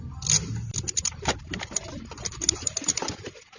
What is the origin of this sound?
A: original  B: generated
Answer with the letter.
A